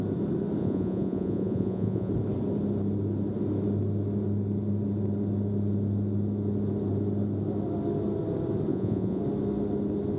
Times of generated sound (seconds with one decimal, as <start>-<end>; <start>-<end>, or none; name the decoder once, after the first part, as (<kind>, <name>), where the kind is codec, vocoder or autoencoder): 0.6-2.1 (vocoder, Vocos); 8.7-9.2